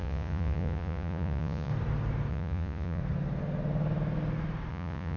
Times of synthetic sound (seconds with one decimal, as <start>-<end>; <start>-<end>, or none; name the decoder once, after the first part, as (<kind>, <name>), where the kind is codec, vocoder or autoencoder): 0.0-1.7 (vocoder, Vocos); 2.3-3.0; 4.7-5.2